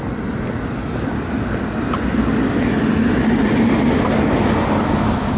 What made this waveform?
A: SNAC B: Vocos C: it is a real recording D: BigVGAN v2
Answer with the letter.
C